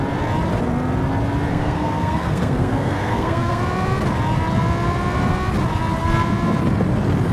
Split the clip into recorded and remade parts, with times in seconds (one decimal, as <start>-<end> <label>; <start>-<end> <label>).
0.0-1.5 recorded; 1.5-3.6 remade; 3.6-7.3 recorded

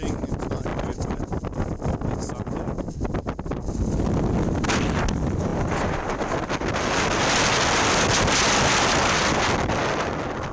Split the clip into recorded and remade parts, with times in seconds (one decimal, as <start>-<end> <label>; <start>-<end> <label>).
0.0-10.5 recorded